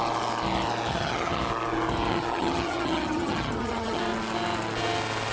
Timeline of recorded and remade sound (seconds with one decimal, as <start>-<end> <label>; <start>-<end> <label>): 0.0-0.9 recorded; 0.9-1.4 remade; 1.4-2.1 recorded; 2.1-4.0 remade; 4.0-5.3 recorded